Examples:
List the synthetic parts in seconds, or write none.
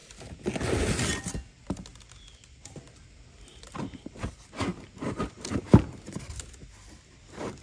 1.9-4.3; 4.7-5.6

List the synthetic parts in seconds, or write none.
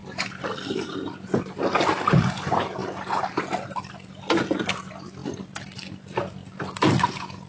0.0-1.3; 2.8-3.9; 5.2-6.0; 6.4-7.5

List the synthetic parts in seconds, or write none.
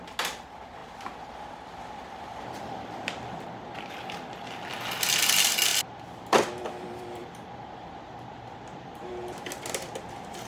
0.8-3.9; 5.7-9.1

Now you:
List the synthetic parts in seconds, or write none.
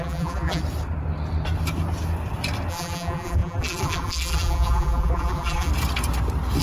0.0-0.6; 2.7-5.7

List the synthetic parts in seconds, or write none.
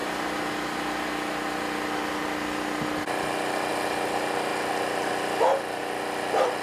none